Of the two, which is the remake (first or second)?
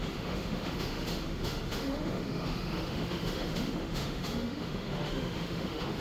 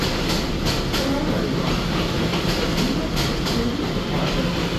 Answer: first